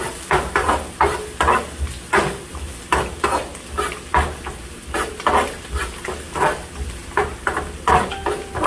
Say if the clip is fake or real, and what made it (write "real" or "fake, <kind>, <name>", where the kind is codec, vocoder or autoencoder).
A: real